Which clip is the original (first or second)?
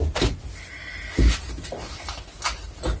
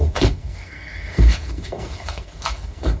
first